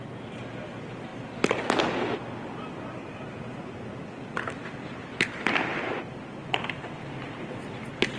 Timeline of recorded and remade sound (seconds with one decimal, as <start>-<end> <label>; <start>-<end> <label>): 0.0-8.2 recorded